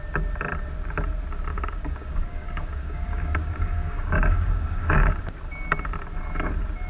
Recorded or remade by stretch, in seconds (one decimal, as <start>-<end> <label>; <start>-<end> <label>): 0.0-1.5 recorded; 1.5-5.2 remade; 5.2-6.9 recorded